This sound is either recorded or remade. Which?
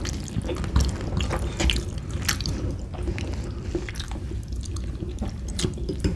recorded